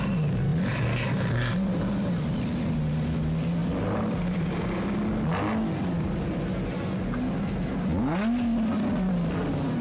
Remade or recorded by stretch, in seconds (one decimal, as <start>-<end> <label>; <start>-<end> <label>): 0.0-0.5 recorded; 0.5-2.7 remade; 2.7-3.6 recorded; 3.6-4.5 remade; 4.5-9.8 recorded